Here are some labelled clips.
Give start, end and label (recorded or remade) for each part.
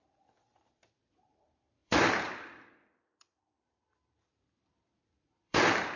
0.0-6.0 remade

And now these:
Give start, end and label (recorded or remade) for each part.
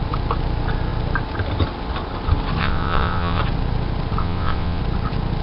0.0-2.6 recorded; 2.6-3.4 remade; 3.4-4.2 recorded; 4.2-4.8 remade; 4.8-5.4 recorded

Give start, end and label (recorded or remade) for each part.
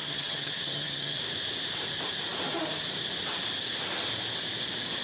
0.0-1.2 remade; 1.2-5.0 recorded